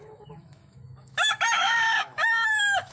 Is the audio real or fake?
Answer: fake